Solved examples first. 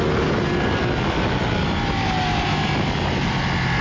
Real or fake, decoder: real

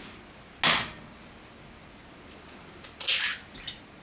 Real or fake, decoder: real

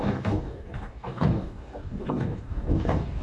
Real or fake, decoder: fake, codec, DAC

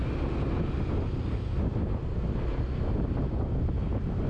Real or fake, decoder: real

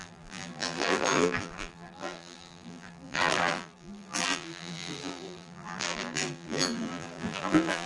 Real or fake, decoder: fake, vocoder, BigVGAN v2